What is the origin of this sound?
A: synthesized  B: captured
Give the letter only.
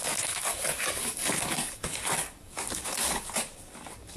A